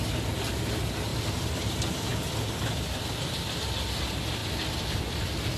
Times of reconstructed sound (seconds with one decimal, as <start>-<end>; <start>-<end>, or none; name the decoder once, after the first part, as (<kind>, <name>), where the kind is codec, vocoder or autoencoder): none